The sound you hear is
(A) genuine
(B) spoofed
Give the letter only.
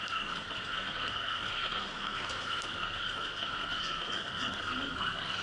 B